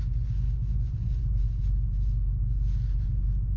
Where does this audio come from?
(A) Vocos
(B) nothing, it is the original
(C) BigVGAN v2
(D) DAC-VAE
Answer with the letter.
B